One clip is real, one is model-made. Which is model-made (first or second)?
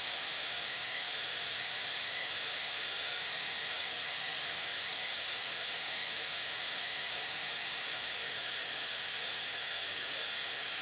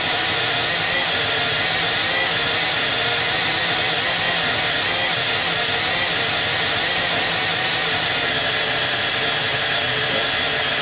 first